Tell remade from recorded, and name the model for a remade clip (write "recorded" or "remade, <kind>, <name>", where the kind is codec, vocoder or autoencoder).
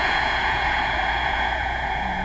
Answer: remade, vocoder, Vocos